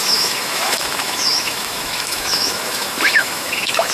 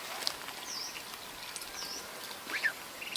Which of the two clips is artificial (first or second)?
first